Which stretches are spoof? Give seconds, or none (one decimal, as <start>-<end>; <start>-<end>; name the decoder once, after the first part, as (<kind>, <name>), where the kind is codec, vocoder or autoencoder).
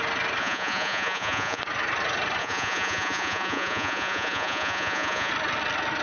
0.4-1.6 (vocoder, Vocos); 2.4-5.3